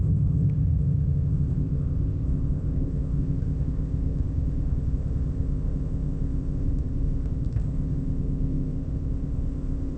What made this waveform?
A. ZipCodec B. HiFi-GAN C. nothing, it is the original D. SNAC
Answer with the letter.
A